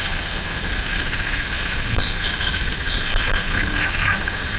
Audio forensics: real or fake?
fake